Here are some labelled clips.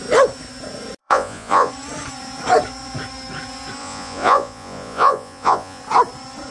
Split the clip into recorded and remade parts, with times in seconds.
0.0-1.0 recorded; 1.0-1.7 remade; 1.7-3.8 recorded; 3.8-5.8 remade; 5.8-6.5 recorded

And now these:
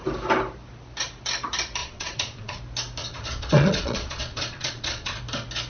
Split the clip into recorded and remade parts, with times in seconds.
0.0-1.8 recorded; 1.8-2.6 remade; 2.6-3.0 recorded; 3.0-5.2 remade; 5.2-5.7 recorded

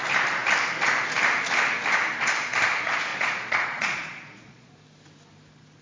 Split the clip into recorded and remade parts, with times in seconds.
0.0-3.1 recorded; 3.1-4.7 remade; 4.7-5.8 recorded

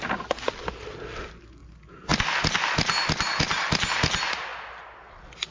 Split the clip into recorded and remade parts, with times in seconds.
0.0-5.5 recorded

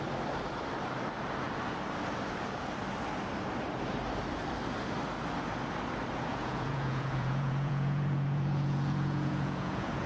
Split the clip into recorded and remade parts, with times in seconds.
0.0-6.3 recorded; 6.3-10.1 remade

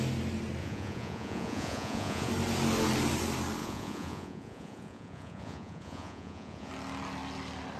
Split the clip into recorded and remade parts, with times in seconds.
0.0-0.6 recorded; 0.6-2.3 remade; 2.3-3.6 recorded; 3.6-6.7 remade; 6.7-7.8 recorded